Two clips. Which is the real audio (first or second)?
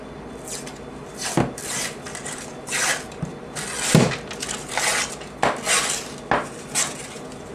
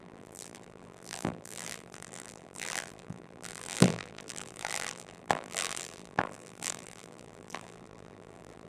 first